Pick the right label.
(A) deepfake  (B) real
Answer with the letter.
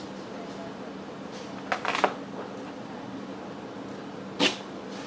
B